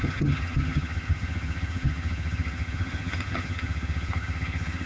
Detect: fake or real fake